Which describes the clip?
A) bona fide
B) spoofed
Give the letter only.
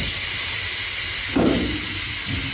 A